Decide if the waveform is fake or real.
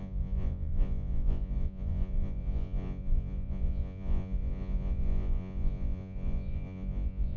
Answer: fake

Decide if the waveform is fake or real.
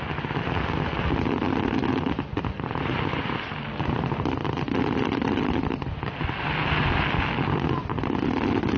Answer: real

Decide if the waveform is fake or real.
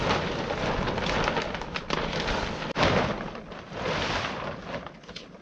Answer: real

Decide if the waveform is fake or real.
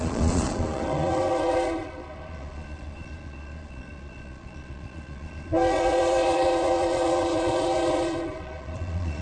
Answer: fake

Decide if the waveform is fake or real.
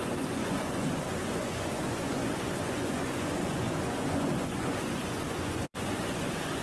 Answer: fake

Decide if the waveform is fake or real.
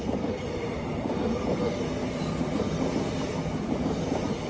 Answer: real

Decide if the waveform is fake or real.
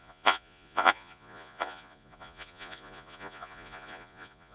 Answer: fake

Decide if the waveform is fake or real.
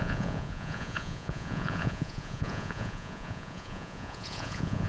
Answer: fake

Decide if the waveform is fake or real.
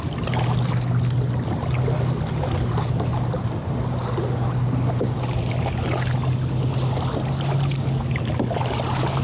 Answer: real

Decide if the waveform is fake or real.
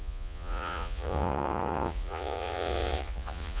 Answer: fake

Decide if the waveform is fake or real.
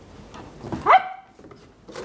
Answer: real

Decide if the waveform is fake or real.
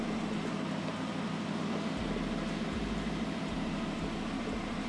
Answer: real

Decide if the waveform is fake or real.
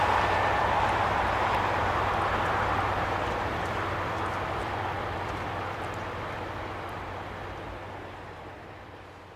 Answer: real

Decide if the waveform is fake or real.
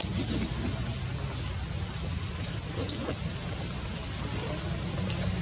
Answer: real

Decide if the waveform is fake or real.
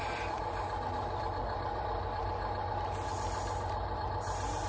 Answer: real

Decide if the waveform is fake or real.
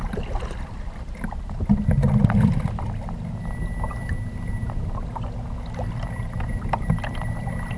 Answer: real